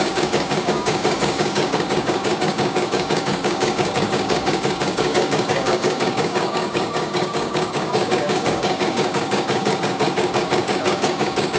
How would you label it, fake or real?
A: fake